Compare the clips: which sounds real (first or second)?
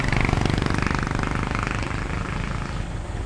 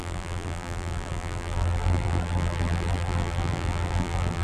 first